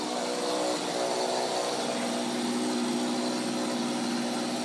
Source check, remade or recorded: recorded